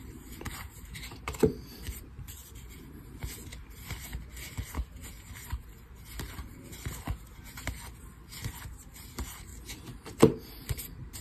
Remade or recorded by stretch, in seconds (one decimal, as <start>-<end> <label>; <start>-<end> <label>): 0.0-4.1 remade; 4.1-8.7 recorded; 8.7-9.5 remade; 9.5-10.5 recorded; 10.5-11.2 remade